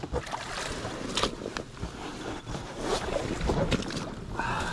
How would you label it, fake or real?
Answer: real